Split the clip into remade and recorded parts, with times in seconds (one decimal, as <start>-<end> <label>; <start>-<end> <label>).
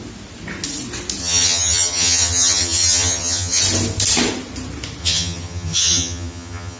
0.0-1.2 recorded; 1.2-3.6 remade; 3.6-5.0 recorded; 5.0-6.8 remade